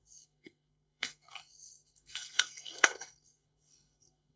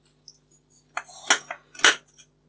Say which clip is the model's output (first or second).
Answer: first